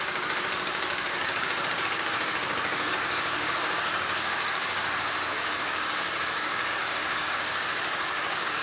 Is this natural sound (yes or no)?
no